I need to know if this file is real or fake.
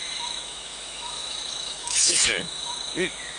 fake